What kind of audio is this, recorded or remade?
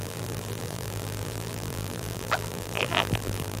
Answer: remade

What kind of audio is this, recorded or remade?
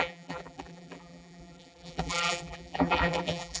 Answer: remade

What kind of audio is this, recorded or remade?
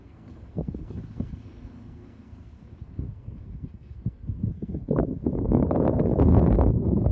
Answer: remade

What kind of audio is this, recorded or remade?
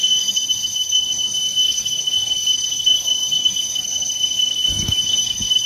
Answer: remade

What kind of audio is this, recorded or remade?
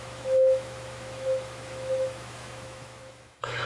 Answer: remade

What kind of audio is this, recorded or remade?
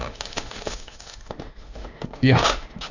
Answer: remade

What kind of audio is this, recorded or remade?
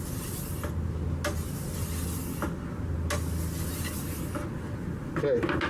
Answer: recorded